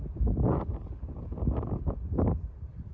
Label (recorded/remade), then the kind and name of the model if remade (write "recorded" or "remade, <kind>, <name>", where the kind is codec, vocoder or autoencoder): recorded